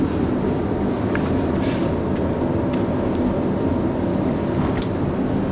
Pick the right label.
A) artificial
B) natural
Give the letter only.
B